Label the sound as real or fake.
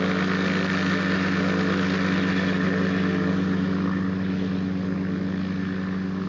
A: real